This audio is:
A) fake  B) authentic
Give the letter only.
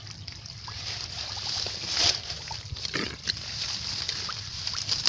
B